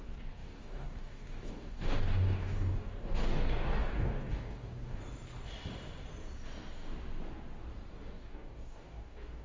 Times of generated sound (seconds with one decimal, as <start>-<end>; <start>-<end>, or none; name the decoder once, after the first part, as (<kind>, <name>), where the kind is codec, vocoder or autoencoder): 0.0-5.0 (codec, DAC); 7.9-9.4